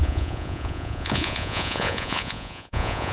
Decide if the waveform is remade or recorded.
remade